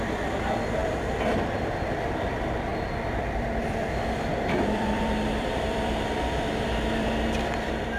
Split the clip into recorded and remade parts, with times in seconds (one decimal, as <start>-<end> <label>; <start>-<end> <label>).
0.0-8.0 remade